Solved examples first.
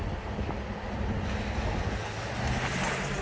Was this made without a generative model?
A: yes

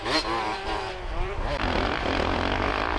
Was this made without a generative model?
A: no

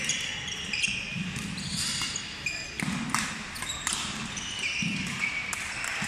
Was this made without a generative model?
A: yes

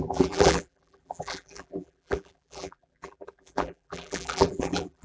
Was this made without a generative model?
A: no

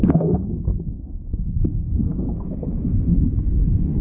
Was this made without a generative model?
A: no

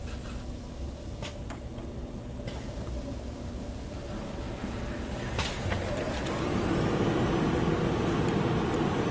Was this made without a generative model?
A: yes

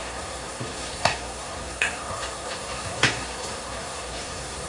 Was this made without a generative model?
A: no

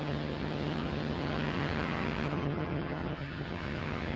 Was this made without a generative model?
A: no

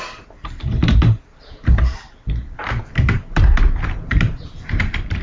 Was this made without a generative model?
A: no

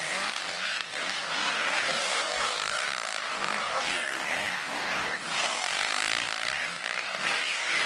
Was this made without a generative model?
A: no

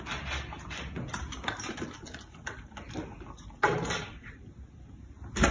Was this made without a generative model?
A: yes